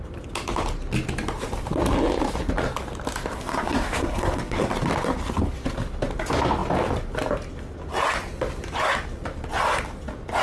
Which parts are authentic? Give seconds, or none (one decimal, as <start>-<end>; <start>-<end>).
0.0-3.3; 4.7-10.4